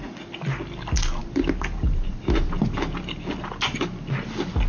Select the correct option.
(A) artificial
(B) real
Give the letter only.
B